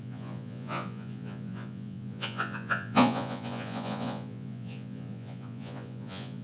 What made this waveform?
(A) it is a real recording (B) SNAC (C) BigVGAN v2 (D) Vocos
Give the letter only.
D